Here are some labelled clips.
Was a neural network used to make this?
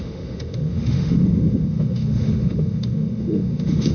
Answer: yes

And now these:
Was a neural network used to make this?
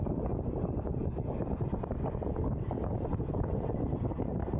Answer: no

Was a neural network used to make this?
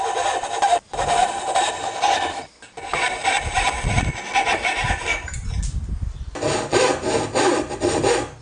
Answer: no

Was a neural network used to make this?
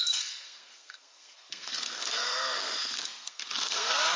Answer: yes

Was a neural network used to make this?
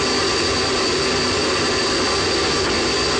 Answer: no